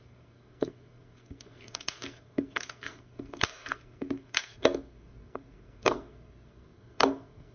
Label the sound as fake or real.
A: fake